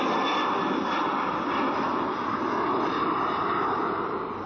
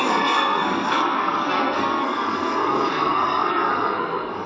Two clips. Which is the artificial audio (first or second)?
second